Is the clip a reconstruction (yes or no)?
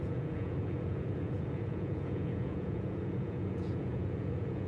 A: yes